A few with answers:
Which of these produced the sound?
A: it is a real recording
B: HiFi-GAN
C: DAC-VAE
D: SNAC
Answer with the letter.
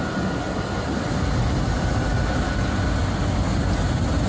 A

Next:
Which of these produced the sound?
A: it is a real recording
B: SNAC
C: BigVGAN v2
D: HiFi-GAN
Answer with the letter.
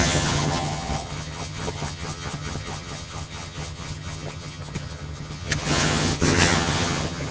D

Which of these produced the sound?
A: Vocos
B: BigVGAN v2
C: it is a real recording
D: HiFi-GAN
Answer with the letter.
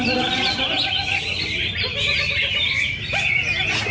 C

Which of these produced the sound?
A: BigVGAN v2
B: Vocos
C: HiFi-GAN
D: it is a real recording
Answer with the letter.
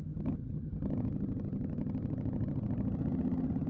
C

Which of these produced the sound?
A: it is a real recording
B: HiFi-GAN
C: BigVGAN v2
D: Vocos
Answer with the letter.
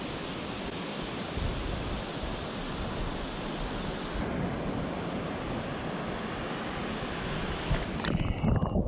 A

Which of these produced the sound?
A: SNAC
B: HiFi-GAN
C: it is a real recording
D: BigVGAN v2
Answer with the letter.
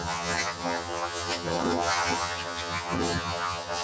B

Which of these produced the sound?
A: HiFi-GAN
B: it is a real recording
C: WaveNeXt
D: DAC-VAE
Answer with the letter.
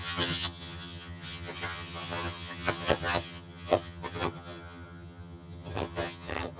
A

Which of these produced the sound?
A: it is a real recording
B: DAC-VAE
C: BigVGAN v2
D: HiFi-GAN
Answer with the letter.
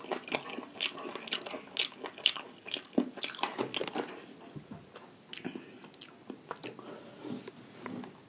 A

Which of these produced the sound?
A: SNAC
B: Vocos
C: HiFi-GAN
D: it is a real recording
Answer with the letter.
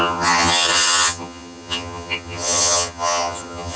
C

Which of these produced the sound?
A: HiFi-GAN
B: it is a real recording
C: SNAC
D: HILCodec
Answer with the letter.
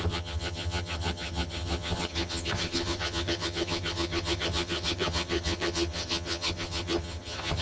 A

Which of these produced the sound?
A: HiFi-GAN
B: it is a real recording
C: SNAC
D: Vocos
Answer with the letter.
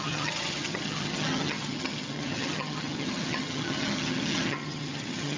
A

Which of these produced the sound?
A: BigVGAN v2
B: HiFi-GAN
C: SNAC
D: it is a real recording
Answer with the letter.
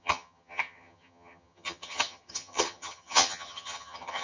B